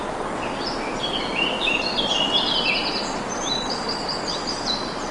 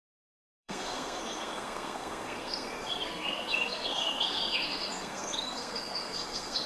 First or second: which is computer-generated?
second